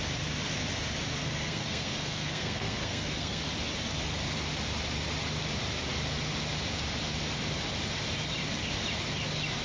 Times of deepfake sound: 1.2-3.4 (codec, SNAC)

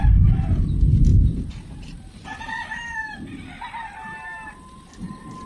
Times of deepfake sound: none

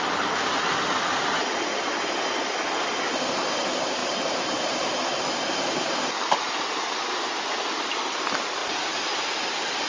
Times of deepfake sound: none